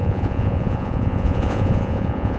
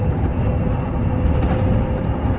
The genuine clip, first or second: second